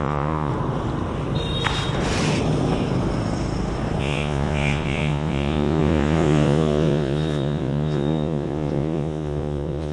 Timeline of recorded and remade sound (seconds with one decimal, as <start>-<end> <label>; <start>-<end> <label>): 0.0-0.5 remade; 0.5-4.0 recorded; 4.0-9.9 remade